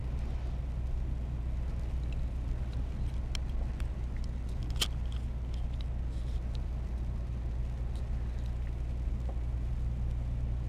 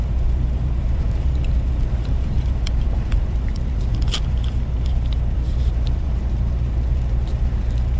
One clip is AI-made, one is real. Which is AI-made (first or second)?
second